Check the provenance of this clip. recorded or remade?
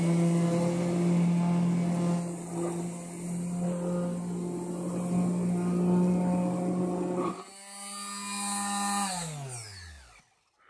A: recorded